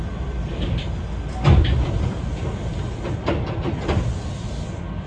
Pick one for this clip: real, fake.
fake